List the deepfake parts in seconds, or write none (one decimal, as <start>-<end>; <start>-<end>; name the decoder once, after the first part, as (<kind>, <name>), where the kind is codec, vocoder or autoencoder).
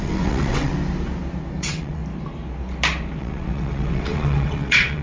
0.0-0.7 (vocoder, WaveNeXt); 1.6-2.0; 3.2-5.0